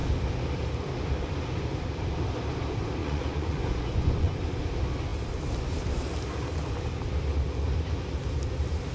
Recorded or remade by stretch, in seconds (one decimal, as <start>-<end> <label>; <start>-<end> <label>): 0.0-3.0 recorded; 3.0-4.4 remade; 4.4-8.9 recorded